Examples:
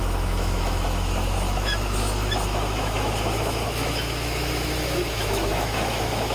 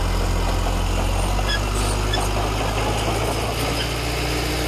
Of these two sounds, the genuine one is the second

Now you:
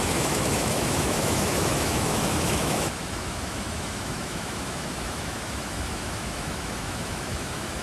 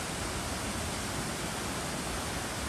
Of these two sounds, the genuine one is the second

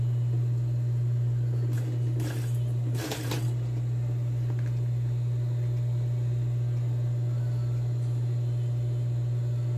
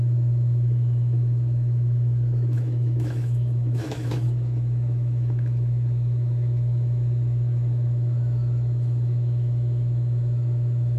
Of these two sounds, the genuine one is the first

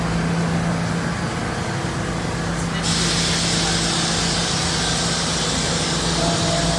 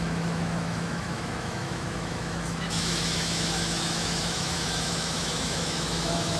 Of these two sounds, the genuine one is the first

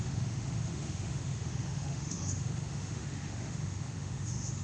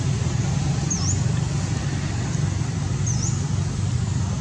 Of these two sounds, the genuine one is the second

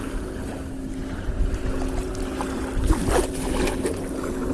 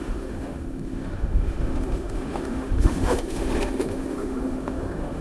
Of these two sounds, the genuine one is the first